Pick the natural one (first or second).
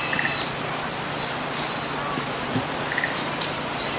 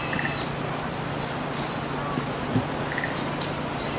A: second